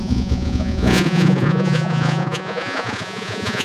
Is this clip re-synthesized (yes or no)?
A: yes